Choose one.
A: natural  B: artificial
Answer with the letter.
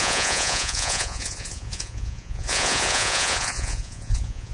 B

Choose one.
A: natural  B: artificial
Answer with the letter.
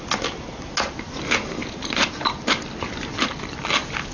A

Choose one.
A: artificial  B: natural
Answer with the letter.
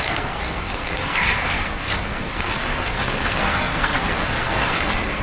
A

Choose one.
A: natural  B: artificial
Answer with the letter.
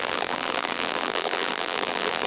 B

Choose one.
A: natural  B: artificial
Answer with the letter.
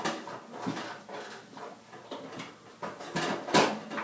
A